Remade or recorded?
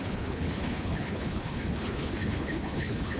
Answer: remade